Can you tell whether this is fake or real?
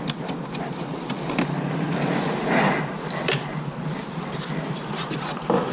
real